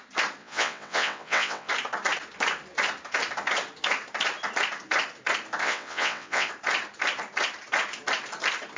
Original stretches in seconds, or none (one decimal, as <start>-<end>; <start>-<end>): 0.0-0.4; 1.7-5.6; 6.5-8.8